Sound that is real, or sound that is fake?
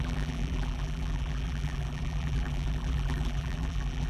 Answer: fake